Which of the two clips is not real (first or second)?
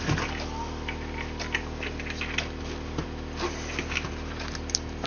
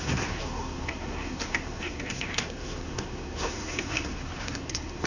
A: second